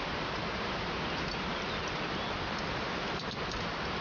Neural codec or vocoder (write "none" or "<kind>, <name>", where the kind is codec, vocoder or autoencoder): none